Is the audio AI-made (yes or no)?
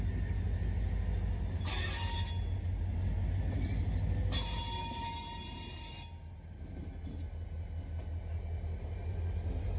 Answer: no